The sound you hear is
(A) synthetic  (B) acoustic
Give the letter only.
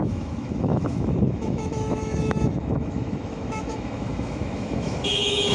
A